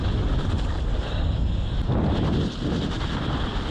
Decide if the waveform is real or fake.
real